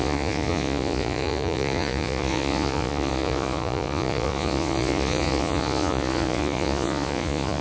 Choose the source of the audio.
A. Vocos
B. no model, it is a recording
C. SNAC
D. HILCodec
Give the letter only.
A